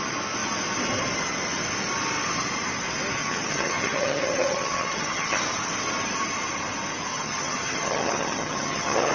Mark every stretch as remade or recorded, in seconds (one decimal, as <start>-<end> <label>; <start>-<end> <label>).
0.0-3.2 recorded; 3.2-5.4 remade; 5.4-7.1 recorded; 7.1-9.1 remade